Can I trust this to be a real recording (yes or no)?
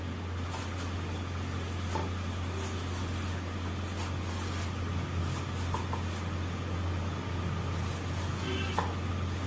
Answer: yes